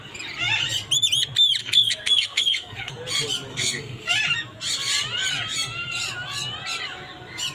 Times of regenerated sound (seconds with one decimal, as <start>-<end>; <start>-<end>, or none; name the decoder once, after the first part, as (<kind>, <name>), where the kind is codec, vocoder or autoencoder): 1.6-2.9 (codec, SNAC); 3.5-4.1